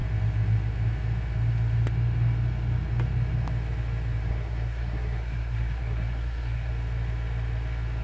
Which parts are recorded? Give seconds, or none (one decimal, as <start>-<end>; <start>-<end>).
0.0-4.3; 6.7-8.0